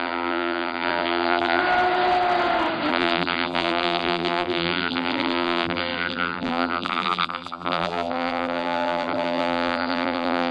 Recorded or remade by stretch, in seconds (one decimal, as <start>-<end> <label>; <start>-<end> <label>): 0.0-1.6 remade; 1.6-2.9 recorded; 2.9-10.5 remade

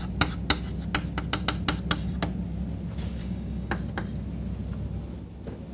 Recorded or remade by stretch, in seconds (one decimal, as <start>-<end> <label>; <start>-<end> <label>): 0.0-3.2 recorded; 3.2-3.7 remade; 3.7-5.7 recorded